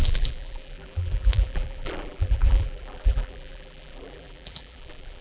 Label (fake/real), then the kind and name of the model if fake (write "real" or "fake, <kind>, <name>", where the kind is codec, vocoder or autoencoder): fake, vocoder, BigVGAN v2